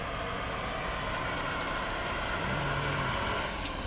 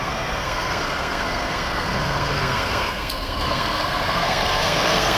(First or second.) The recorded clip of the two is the first